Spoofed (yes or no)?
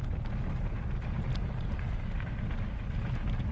no